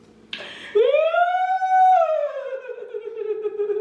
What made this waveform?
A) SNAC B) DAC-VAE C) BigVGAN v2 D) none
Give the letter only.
D